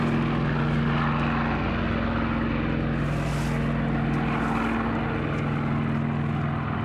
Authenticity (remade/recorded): recorded